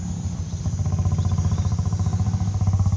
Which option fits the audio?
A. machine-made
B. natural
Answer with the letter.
B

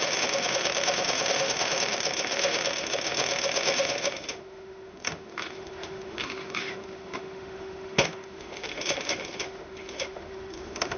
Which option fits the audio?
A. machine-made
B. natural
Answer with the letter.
A